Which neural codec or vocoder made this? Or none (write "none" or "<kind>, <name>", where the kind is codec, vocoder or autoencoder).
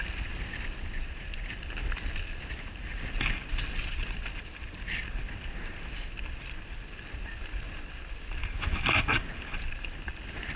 none